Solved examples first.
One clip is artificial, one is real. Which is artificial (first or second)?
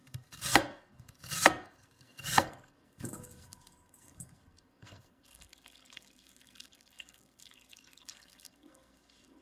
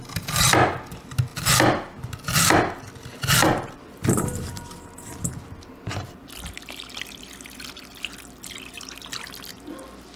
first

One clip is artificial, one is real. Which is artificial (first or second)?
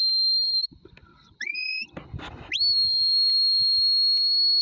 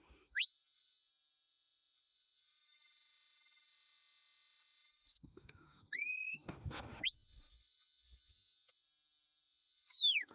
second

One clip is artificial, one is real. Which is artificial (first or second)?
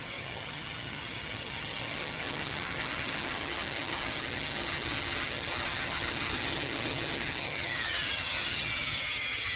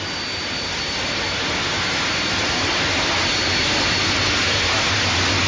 first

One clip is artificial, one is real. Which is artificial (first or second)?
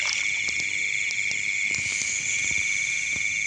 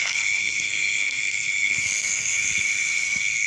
second